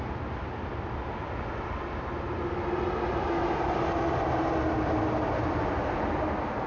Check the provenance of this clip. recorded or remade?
recorded